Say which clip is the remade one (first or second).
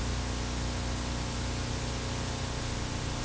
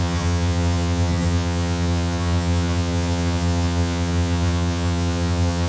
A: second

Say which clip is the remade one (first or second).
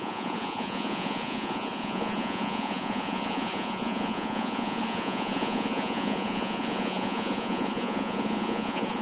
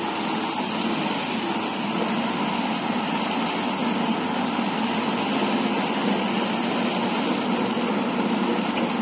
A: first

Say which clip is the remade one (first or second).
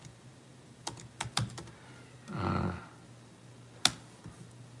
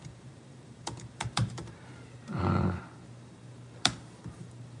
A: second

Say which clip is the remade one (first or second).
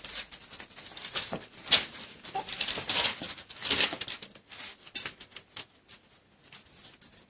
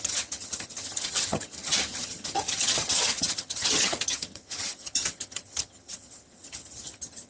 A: second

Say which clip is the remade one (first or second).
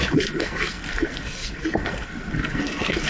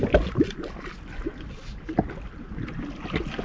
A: first